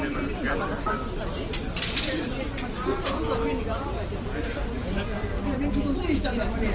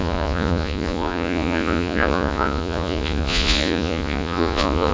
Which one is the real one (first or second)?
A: first